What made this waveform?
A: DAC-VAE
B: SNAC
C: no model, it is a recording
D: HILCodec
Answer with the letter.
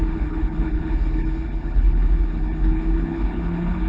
D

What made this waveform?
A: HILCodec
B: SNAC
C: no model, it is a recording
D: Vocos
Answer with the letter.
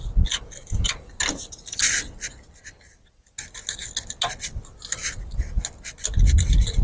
C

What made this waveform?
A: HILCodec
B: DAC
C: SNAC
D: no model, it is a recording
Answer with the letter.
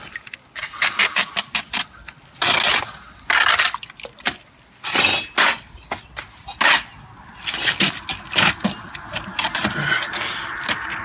D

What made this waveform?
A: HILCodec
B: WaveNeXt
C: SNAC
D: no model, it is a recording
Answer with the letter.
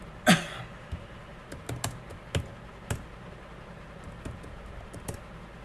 D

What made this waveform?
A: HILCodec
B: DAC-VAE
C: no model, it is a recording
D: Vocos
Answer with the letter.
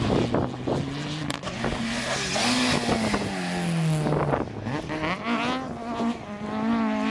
C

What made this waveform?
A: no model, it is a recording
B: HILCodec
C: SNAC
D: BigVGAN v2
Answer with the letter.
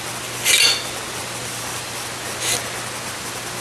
A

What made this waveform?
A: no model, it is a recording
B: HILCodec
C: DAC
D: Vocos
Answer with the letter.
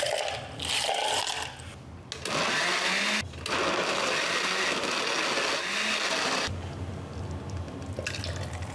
A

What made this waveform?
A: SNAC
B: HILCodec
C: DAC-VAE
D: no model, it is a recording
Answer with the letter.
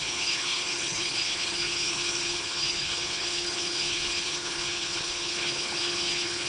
B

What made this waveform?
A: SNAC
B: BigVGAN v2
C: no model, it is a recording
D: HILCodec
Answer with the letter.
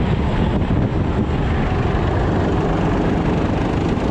C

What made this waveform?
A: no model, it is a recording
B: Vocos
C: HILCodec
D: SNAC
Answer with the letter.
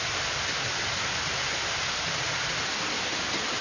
A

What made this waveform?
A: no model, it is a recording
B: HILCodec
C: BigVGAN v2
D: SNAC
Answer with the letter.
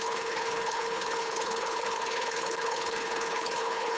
B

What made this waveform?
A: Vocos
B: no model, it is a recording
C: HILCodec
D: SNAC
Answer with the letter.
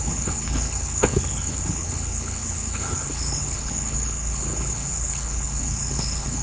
C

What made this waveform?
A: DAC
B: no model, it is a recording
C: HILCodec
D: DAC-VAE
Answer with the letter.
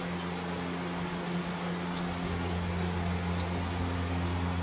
B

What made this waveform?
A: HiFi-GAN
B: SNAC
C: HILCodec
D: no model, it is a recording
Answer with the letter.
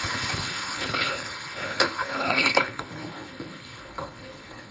C